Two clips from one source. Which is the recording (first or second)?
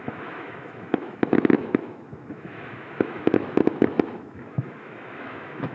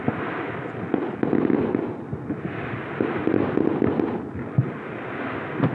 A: second